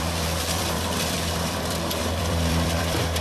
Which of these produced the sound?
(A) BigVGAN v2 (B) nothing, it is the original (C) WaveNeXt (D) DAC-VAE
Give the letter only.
A